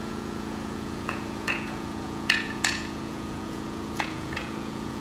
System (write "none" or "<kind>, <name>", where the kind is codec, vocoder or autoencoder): vocoder, Vocos